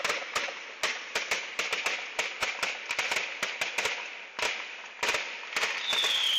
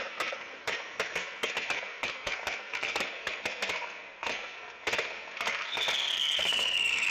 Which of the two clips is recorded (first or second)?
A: first